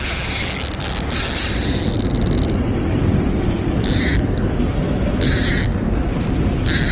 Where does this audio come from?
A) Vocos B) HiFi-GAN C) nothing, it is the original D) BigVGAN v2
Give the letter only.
C